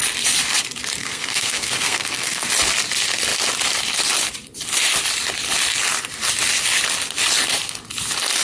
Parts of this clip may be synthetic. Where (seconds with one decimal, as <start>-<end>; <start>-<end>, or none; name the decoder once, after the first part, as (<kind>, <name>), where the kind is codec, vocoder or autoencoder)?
1.0-2.5 (codec, SNAC)